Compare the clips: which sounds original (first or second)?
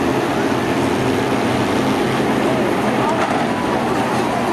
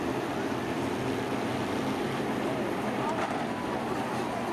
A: first